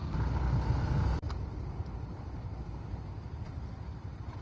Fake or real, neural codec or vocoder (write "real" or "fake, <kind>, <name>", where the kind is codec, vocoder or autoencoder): real